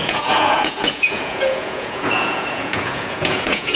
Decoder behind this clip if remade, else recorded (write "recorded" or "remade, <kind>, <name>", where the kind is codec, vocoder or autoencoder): remade, vocoder, Vocos